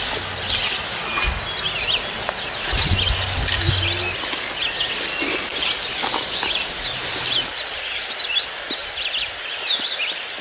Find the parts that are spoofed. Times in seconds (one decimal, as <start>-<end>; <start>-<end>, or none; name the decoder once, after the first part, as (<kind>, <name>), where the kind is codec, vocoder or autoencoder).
none